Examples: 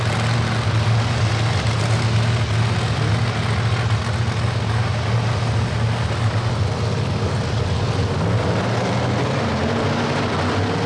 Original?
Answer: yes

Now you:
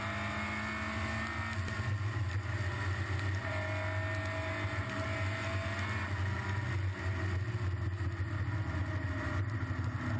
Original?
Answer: yes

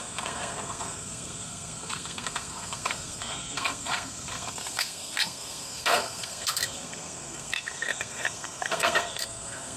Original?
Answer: no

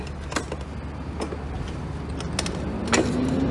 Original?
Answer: yes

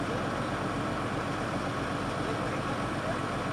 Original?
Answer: yes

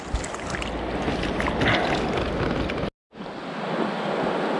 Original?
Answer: yes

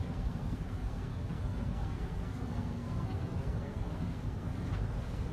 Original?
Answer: no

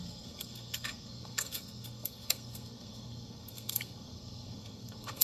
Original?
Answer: no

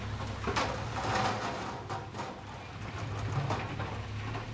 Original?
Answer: yes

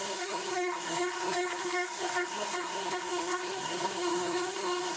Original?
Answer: no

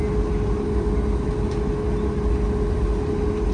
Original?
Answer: yes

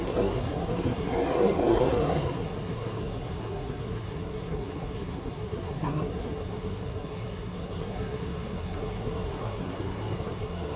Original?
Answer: no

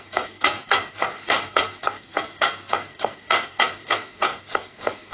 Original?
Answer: no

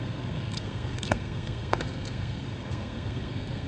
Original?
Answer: no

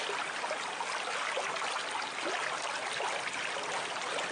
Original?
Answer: yes